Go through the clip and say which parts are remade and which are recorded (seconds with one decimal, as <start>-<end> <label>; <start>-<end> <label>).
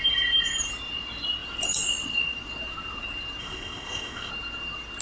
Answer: 0.0-3.4 recorded; 3.4-4.3 remade; 4.3-5.0 recorded